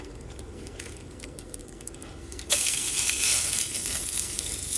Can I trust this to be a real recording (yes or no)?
no